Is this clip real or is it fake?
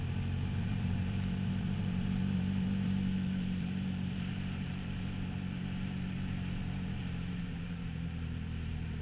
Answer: fake